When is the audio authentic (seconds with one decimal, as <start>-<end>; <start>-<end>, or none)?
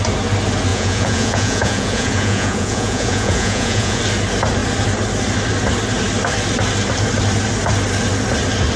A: 0.0-0.7; 4.0-8.8